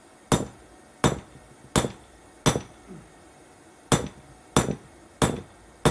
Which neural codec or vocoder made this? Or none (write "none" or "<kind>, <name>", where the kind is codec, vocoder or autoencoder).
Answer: none